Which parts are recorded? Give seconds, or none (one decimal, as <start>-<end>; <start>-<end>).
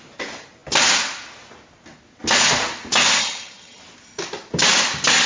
0.0-3.2; 3.8-5.3